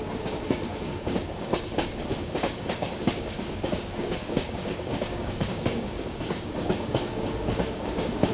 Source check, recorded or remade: remade